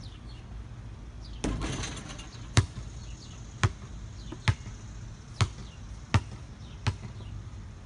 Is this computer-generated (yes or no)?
no